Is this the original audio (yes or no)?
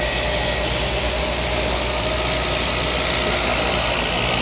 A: yes